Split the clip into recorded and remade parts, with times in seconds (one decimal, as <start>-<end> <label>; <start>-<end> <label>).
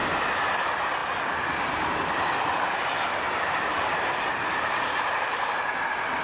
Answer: 0.0-6.2 recorded